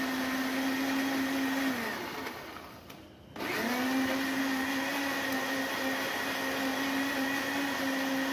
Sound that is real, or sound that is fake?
real